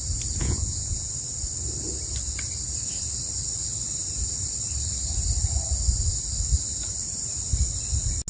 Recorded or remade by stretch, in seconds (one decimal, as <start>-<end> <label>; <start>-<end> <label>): 0.0-0.4 recorded; 0.4-1.1 remade; 1.1-8.3 recorded